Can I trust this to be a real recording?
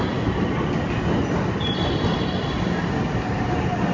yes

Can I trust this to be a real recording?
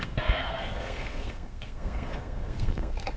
no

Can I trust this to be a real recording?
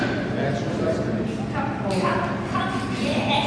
yes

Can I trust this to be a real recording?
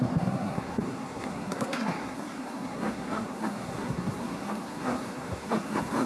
no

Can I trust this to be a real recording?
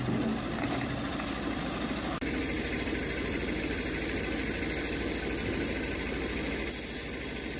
yes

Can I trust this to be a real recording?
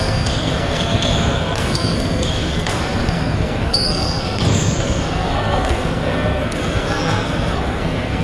no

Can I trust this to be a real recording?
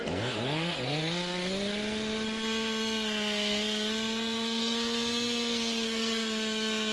no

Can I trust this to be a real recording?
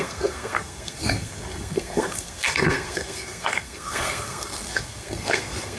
no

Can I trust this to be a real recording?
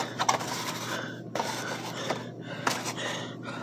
yes